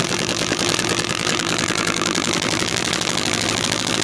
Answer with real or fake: fake